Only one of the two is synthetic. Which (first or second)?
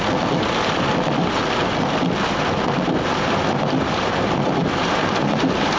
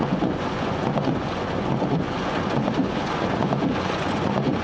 second